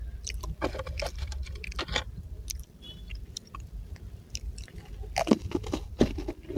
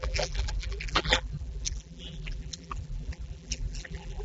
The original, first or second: first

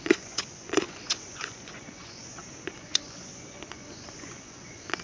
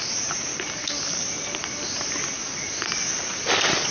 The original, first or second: second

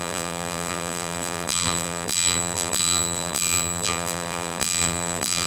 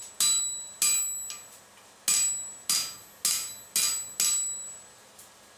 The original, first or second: second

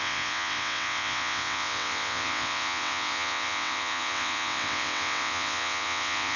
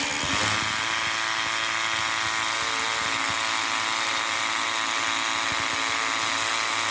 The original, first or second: second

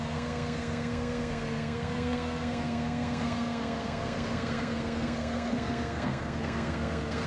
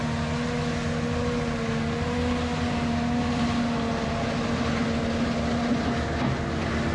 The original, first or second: second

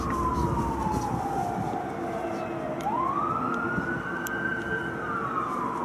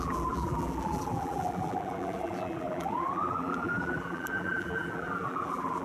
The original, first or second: first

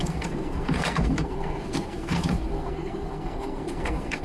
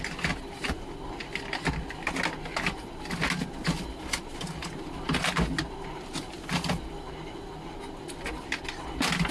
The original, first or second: second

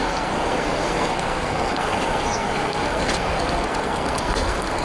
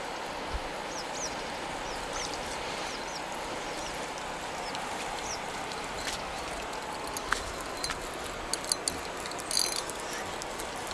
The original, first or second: second